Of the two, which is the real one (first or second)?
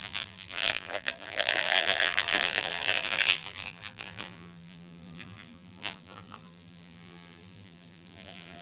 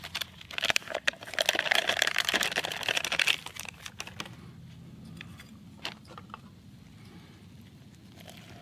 second